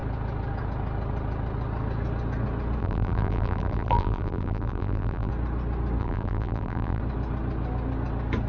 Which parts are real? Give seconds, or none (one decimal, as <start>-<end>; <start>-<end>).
0.0-2.8; 5.3-6.0; 7.0-8.5